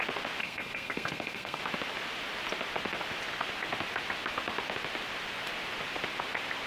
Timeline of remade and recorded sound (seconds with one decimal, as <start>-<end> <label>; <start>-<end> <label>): 0.0-0.4 recorded; 0.4-1.6 remade; 1.6-6.7 recorded

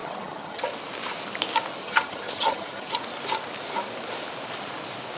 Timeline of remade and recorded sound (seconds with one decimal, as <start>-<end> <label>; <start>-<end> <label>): 0.0-0.6 remade; 0.6-1.8 recorded; 1.8-2.9 remade; 2.9-5.2 recorded

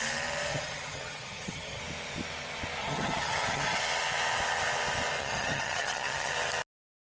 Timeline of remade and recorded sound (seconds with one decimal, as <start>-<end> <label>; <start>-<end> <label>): 0.0-0.5 recorded; 0.5-1.8 remade; 1.8-2.8 recorded; 2.8-3.8 remade; 3.8-5.2 recorded; 5.2-6.3 remade; 6.3-7.1 recorded

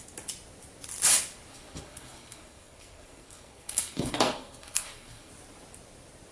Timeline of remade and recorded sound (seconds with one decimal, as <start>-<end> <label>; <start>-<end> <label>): 0.0-1.5 recorded; 1.5-5.3 remade; 5.3-6.3 recorded

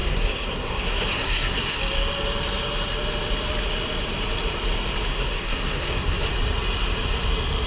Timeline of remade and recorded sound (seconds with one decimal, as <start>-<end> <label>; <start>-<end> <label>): 0.0-1.8 remade; 1.8-5.1 recorded; 5.1-6.3 remade; 6.3-7.7 recorded

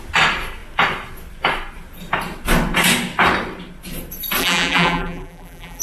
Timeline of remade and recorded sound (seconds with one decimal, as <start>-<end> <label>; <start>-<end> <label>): 0.0-4.4 recorded; 4.4-5.8 remade

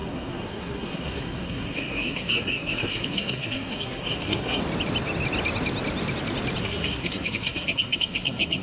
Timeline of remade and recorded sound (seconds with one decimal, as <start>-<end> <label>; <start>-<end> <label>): 0.0-4.6 remade; 4.6-6.6 recorded; 6.6-8.6 remade